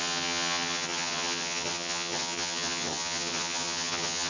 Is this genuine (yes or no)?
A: no